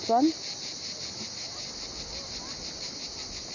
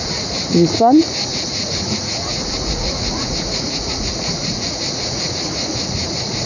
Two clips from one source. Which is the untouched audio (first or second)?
first